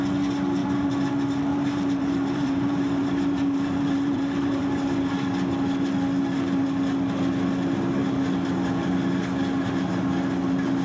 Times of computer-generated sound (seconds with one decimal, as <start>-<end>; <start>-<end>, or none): 0.6-1.1; 1.5-4.8

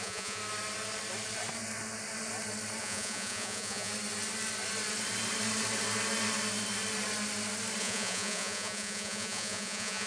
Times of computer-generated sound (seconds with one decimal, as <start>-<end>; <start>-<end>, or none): 0.0-0.4; 2.8-3.9; 7.8-10.1